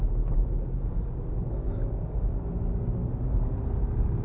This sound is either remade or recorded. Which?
recorded